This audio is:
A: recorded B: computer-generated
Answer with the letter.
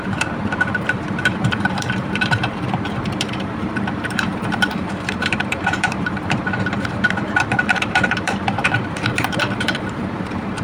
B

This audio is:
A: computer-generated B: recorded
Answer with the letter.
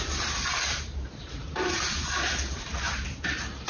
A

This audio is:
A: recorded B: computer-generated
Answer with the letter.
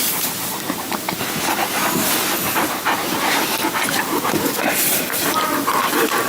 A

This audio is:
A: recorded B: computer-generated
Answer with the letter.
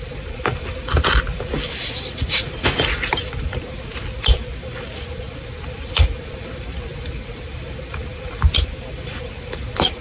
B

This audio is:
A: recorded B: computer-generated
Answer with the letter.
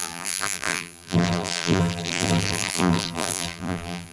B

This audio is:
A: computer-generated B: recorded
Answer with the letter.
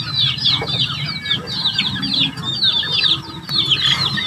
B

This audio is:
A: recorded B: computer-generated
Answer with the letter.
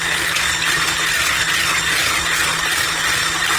A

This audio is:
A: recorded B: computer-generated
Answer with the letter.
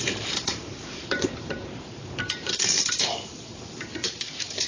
B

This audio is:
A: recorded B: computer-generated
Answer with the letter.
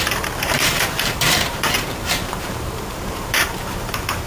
B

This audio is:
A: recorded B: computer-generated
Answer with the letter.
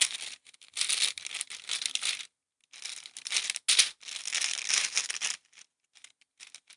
A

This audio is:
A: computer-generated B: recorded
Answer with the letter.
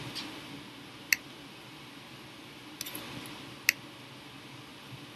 B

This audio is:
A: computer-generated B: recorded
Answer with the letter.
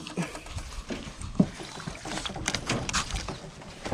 B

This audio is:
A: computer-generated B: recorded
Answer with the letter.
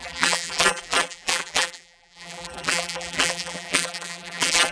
A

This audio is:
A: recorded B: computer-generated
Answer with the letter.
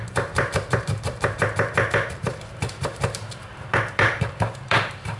B